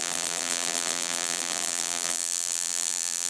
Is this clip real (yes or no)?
no